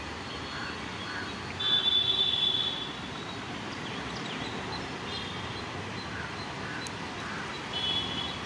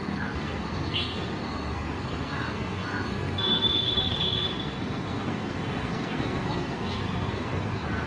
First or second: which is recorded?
first